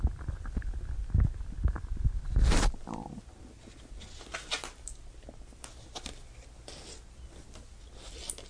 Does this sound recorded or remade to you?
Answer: recorded